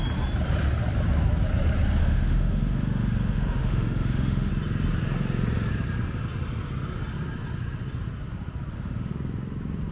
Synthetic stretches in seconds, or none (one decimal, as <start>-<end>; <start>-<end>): 2.0-4.5; 8.7-9.1